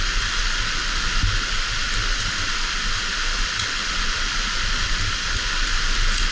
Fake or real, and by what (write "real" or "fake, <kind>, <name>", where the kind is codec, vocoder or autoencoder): real